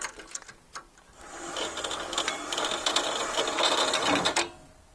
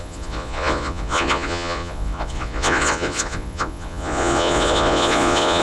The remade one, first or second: second